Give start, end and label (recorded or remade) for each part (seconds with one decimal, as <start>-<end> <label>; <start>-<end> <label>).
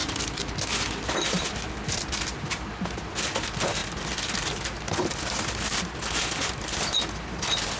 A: 0.0-7.8 recorded